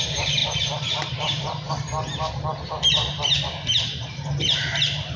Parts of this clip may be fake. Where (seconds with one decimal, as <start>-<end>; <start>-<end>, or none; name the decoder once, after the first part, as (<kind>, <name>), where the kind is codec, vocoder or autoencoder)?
0.0-5.2 (vocoder, BigVGAN v2)